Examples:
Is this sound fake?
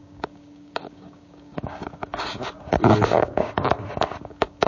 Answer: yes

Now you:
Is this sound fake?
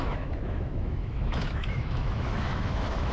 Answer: yes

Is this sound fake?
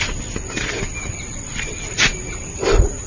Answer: no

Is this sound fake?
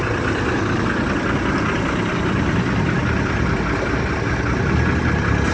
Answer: no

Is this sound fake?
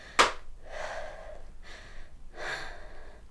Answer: no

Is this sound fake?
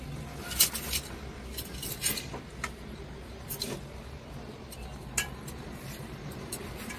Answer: no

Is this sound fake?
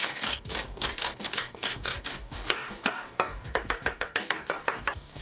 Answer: yes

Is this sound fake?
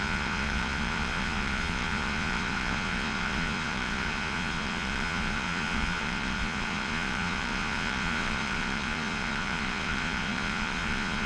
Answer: yes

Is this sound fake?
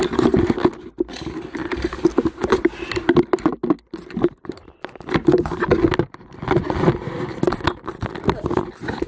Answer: no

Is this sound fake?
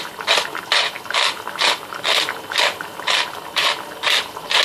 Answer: no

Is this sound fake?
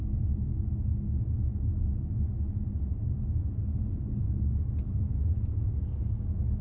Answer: no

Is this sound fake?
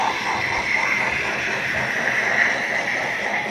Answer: yes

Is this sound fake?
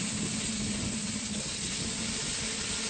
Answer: no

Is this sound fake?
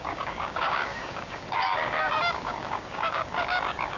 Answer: yes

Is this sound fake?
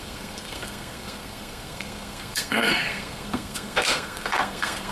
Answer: yes